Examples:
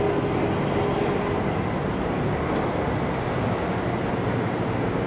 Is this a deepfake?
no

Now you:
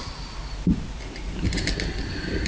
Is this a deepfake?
no